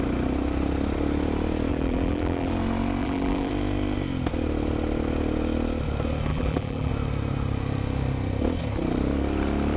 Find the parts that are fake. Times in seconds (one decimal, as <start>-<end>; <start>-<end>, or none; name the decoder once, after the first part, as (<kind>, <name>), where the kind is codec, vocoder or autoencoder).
1.7-2.5 (vocoder, BigVGAN v2); 3.0-3.5; 6.3-6.9